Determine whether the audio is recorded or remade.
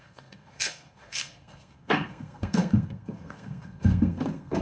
remade